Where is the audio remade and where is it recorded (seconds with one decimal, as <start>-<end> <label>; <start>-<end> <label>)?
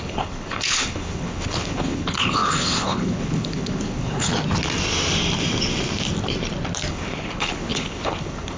0.0-4.3 remade; 4.3-6.9 recorded; 6.9-8.6 remade